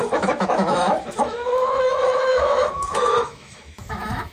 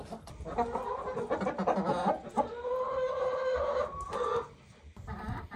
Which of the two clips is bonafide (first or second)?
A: second